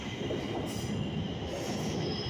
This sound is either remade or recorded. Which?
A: recorded